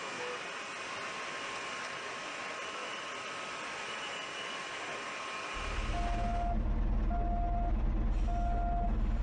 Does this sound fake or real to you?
real